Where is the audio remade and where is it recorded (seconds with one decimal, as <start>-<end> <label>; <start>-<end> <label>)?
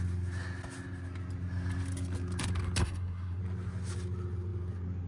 0.0-2.8 recorded; 2.8-3.4 remade; 3.4-5.1 recorded